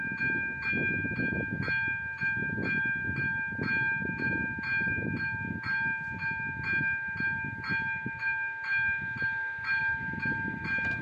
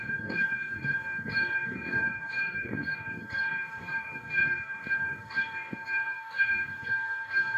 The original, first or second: first